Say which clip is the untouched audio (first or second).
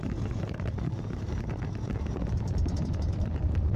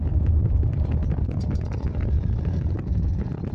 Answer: second